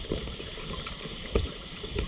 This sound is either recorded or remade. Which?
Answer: remade